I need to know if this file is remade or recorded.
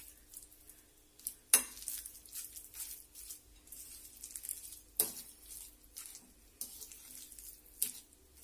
recorded